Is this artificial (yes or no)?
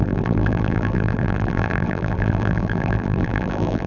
yes